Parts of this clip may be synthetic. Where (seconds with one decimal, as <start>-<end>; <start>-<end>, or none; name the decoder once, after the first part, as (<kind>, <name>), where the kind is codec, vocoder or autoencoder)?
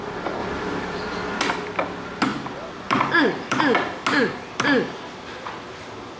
2.3-3.6 (vocoder, BigVGAN v2)